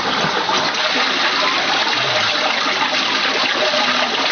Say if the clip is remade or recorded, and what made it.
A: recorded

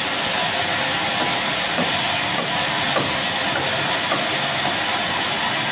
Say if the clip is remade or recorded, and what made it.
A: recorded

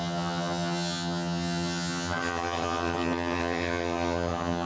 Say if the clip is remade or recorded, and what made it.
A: remade, vocoder, HiFi-GAN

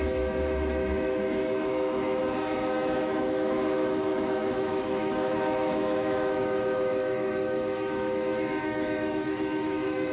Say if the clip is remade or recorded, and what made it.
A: remade, autoencoder, DAC-VAE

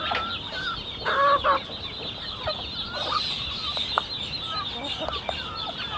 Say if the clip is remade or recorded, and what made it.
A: recorded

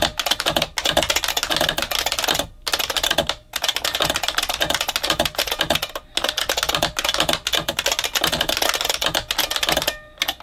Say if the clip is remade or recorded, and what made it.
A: recorded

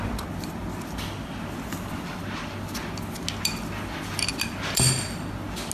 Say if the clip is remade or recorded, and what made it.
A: recorded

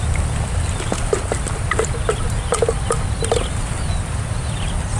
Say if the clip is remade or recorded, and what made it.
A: recorded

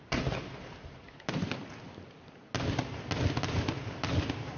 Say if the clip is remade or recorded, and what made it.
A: recorded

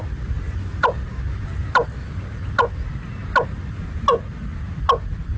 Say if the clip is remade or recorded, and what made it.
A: recorded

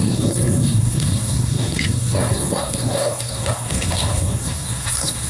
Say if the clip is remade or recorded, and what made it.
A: remade, codec, SNAC